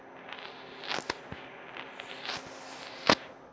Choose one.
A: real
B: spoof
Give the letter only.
A